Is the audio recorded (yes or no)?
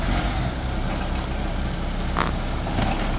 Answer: yes